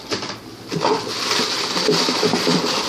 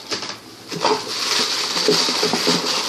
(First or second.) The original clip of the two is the second